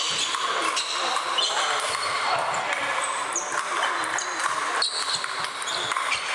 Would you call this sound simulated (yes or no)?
no